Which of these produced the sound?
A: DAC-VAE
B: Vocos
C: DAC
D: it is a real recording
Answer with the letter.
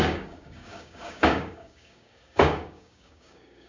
C